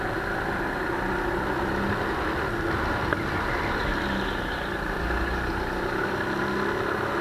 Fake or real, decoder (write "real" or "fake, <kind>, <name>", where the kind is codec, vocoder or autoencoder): real